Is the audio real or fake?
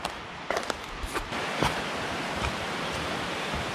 real